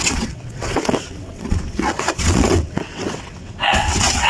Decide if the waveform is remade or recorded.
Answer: remade